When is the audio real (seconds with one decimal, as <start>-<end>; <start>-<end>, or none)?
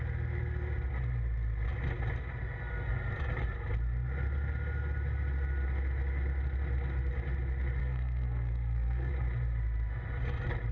0.0-7.8; 9.1-10.7